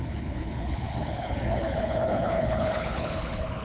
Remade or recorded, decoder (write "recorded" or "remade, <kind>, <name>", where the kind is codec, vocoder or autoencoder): remade, codec, HILCodec